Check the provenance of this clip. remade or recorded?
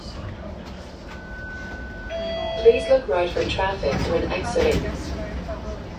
recorded